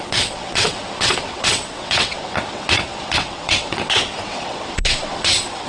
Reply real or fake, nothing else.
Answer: fake